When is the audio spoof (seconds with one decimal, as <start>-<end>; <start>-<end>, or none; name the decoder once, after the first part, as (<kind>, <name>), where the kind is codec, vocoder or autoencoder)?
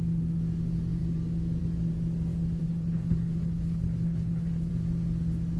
2.6-4.7 (codec, HILCodec)